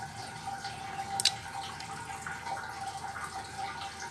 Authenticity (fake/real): real